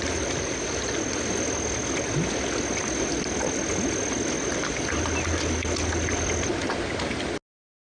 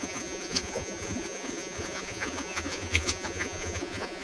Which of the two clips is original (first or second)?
first